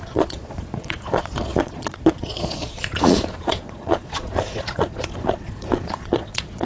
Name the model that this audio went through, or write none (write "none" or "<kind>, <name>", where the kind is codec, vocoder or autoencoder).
vocoder, Vocos